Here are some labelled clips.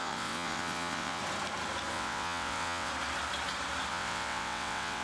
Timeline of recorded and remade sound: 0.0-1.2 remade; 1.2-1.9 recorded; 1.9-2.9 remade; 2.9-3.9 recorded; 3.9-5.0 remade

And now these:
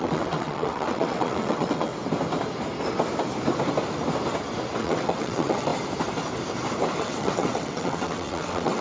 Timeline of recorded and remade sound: 0.0-1.9 remade; 1.9-4.8 recorded; 4.8-5.7 remade; 5.7-7.0 recorded; 7.0-8.8 remade

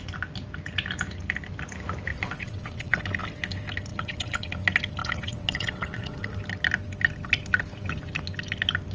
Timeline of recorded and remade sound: 0.0-2.1 recorded; 2.1-3.0 remade; 3.0-3.9 recorded; 3.9-4.5 remade; 4.5-5.0 recorded; 5.0-6.3 remade; 6.3-8.9 recorded

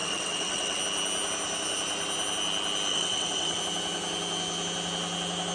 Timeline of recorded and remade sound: 0.0-0.8 remade; 0.8-2.9 recorded; 2.9-3.6 remade; 3.6-5.5 recorded